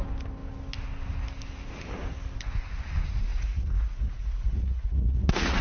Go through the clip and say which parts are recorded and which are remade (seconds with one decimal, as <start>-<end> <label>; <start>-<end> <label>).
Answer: 0.0-3.3 recorded; 3.3-5.6 remade